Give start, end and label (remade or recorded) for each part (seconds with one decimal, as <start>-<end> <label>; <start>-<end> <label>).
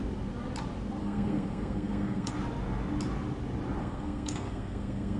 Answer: 0.0-1.0 recorded; 1.0-2.3 remade; 2.3-3.8 recorded; 3.8-5.2 remade